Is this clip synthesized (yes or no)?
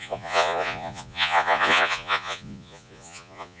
yes